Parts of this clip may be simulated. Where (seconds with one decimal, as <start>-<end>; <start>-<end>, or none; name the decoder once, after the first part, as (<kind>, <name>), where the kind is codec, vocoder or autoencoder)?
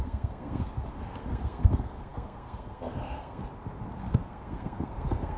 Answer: 0.0-3.4 (codec, SNAC); 4.0-5.4